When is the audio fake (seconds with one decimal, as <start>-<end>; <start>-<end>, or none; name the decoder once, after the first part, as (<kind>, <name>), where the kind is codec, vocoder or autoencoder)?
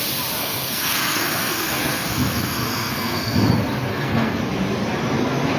0.4-3.5 (codec, SNAC); 3.9-4.4